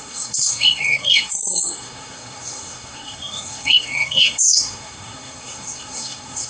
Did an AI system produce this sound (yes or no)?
yes